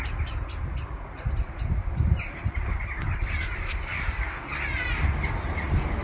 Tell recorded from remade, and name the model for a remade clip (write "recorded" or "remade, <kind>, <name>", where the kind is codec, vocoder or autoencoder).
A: recorded